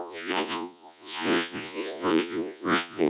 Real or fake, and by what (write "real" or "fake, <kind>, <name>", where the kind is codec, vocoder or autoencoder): fake, vocoder, Vocos